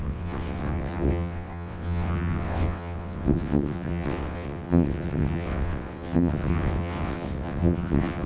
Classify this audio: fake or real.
fake